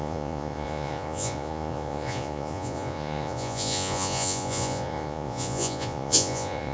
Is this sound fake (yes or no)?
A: yes